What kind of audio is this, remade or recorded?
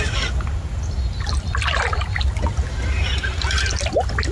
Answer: recorded